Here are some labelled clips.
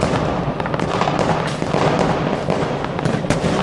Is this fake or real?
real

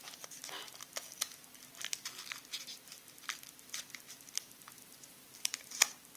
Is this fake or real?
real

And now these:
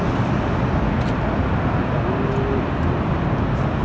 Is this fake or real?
real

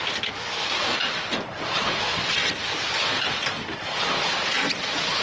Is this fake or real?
fake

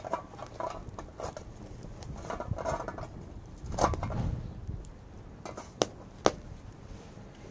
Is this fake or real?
real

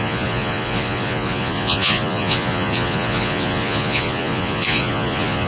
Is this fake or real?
fake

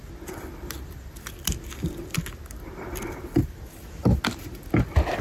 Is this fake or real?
real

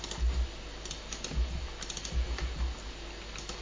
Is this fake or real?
real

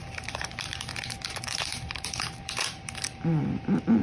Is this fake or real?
fake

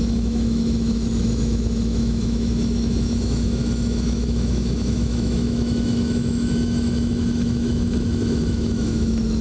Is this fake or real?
fake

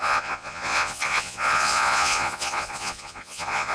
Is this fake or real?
fake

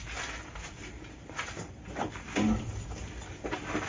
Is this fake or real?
real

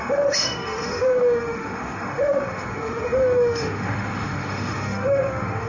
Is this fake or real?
fake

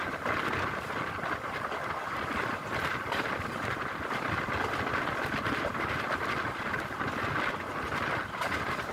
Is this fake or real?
real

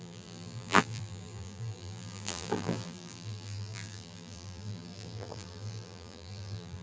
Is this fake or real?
fake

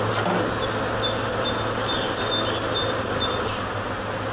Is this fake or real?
real